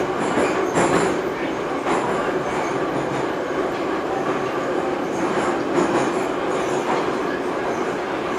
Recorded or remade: recorded